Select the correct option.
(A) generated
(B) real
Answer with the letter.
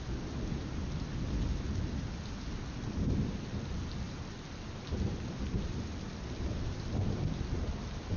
B